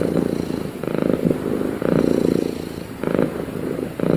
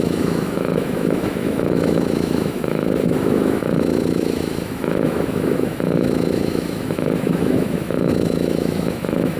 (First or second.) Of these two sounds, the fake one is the second